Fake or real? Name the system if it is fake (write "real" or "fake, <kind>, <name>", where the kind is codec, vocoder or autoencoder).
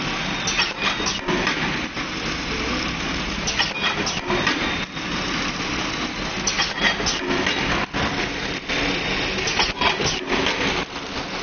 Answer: real